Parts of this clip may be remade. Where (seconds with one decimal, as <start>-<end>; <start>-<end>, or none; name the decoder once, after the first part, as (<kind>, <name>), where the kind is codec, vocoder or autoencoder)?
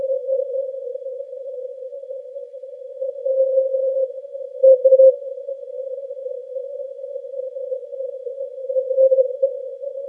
0.9-2.9 (autoencoder, DAC-VAE)